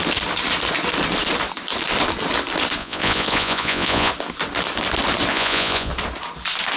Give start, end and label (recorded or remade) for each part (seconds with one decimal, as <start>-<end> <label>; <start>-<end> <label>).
0.0-2.8 recorded; 2.8-4.1 remade; 4.1-5.3 recorded; 5.3-5.9 remade; 5.9-6.8 recorded